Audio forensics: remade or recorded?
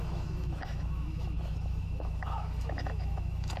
remade